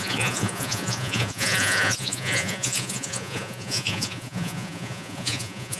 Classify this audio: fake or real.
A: fake